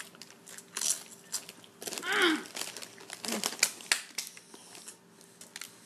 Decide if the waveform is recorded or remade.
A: recorded